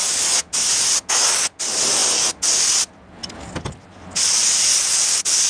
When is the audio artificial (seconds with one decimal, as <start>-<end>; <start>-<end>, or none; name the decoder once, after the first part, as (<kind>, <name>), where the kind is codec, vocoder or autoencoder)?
0.0-0.8 (vocoder, BigVGAN v2)